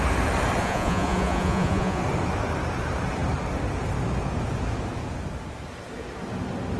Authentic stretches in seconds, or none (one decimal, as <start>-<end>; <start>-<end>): 0.0-0.6; 2.0-6.8

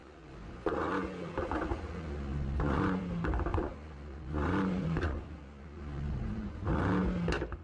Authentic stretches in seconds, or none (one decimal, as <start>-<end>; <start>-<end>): 3.0-3.5; 6.7-7.6